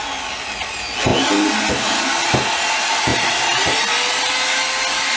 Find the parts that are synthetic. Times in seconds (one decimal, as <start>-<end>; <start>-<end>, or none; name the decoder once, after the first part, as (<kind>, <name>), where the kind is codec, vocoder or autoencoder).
none